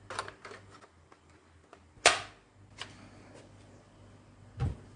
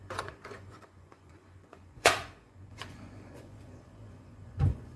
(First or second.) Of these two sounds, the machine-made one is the second